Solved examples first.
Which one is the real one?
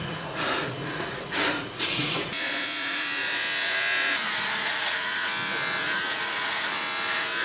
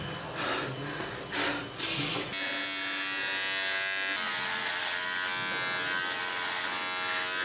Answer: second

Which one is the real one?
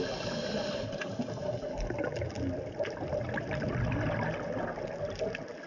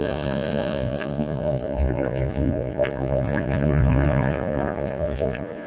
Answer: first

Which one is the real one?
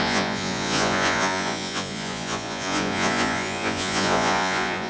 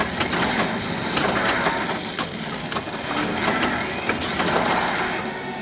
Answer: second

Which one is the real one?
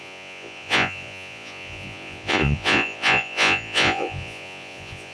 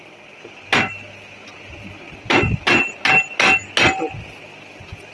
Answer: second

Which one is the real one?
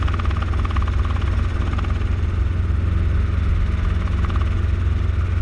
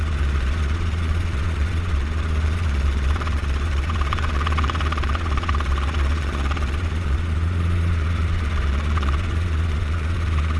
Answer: first